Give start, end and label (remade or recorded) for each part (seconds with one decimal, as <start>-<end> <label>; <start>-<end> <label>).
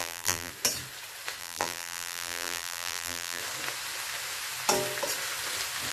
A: 0.0-0.5 remade; 0.5-1.4 recorded; 1.4-3.4 remade; 3.4-5.9 recorded